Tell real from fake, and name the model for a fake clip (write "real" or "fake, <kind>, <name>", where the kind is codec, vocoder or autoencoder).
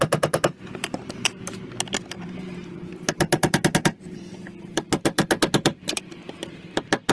fake, vocoder, BigVGAN v2